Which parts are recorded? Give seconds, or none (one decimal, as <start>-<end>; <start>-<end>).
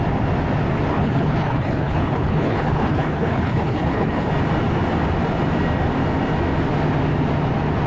0.0-0.9; 4.3-7.9